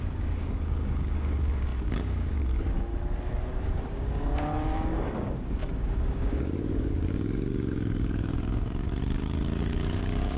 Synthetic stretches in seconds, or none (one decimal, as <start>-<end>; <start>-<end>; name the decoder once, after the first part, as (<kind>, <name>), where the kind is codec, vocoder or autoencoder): 0.0-2.9 (codec, DAC); 3.9-10.4